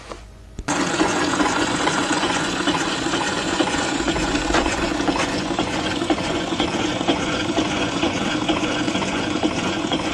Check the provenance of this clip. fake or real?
fake